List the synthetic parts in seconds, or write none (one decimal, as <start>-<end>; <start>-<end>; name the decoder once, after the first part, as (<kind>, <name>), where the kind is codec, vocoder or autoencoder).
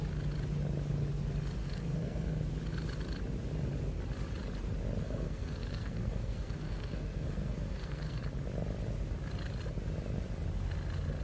1.6-2.4 (codec, SNAC); 5.0-8.2